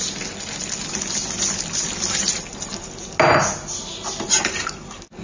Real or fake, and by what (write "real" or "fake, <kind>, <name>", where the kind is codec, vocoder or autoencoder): real